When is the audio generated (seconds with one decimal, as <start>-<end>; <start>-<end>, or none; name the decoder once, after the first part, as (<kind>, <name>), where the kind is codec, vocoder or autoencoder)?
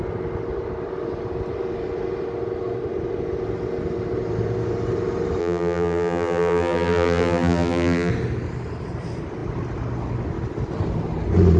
5.4-8.1 (vocoder, BigVGAN v2)